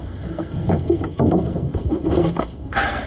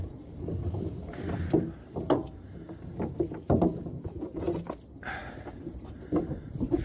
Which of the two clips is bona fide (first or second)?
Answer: second